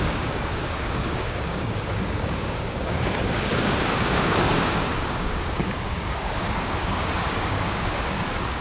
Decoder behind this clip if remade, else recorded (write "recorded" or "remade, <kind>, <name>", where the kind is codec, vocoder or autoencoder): remade, codec, DAC